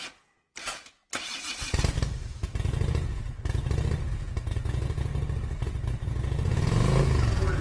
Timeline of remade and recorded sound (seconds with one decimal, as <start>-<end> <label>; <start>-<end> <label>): 0.0-1.0 remade; 1.0-2.3 recorded; 2.3-3.2 remade; 3.2-4.2 recorded; 4.2-5.1 remade; 5.1-5.9 recorded; 5.9-7.6 remade